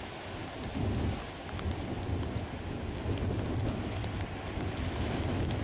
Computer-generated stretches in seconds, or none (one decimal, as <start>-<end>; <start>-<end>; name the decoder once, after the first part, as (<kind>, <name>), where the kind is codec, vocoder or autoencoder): 0.0-0.4 (autoencoder, DAC-VAE); 3.6-4.0; 4.8-5.6